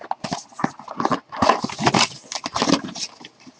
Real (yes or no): yes